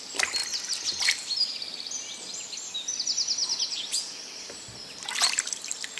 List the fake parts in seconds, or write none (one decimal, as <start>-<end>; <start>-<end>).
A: none

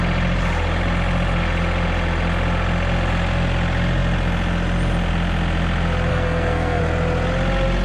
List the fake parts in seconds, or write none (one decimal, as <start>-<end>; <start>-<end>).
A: 6.1-6.8

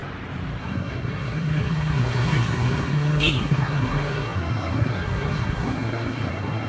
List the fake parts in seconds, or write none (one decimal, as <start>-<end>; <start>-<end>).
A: 0.6-6.7